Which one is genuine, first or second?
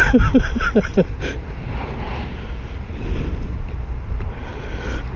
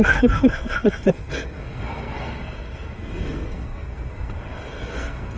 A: first